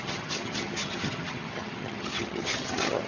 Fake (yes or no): yes